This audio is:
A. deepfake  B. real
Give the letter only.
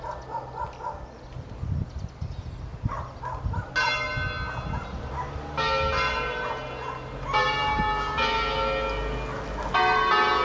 B